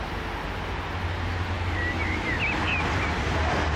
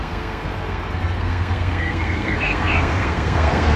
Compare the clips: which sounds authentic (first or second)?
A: first